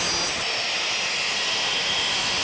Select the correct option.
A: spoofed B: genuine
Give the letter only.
B